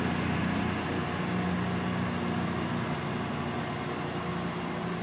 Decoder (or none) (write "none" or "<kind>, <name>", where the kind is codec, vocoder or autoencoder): none